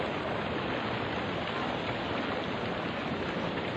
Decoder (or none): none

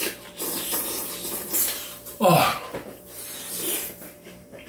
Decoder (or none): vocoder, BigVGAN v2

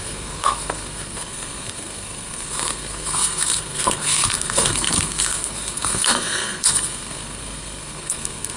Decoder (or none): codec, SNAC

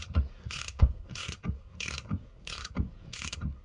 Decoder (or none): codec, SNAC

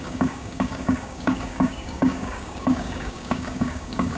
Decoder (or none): codec, DAC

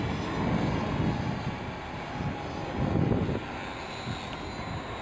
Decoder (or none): vocoder, BigVGAN v2